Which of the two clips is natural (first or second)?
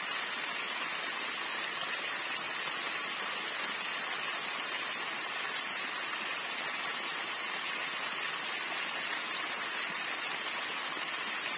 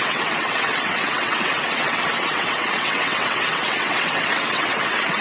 first